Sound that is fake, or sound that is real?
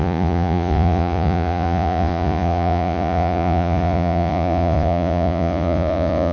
fake